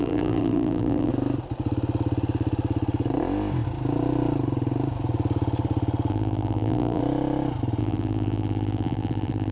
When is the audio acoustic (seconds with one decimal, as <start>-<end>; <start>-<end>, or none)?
1.1-6.1; 7.0-7.8